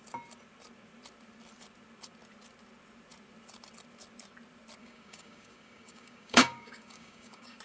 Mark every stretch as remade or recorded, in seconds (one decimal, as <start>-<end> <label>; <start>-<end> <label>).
0.0-4.8 recorded; 4.8-7.6 remade